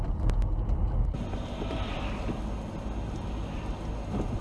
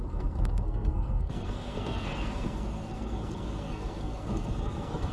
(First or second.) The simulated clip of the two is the second